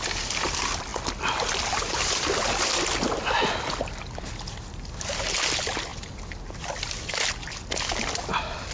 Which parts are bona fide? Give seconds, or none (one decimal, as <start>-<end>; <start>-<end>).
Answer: 0.0-8.7